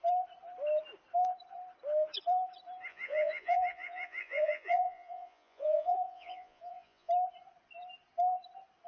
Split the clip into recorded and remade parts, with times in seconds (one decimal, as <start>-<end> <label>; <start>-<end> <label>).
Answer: 0.0-2.9 recorded; 2.9-7.1 remade; 7.1-8.9 recorded